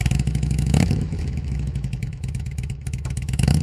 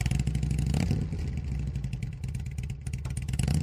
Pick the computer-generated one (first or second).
first